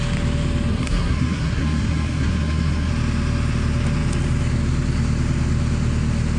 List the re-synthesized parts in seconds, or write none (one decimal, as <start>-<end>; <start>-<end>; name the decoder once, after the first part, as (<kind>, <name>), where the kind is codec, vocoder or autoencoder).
0.7-2.9 (codec, SNAC)